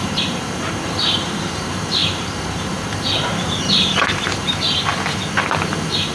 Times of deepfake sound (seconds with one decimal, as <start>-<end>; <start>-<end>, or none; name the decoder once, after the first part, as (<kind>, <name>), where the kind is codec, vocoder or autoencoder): 0.0-4.9 (vocoder, BigVGAN v2)